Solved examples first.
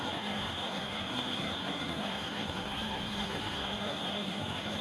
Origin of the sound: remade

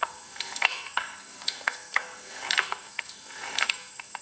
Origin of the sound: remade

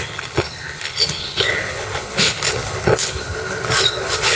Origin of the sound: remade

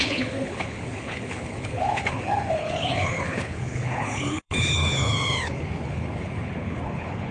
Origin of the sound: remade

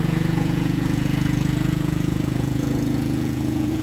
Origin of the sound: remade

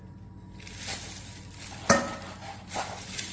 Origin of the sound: recorded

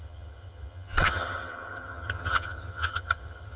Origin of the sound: remade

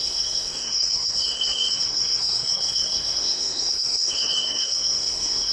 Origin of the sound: remade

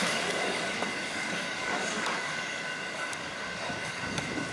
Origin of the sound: remade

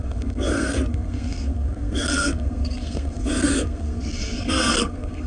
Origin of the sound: remade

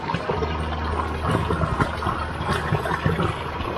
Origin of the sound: recorded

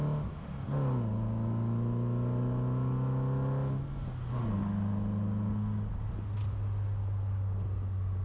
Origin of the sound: recorded